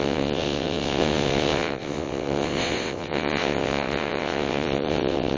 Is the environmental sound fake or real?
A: fake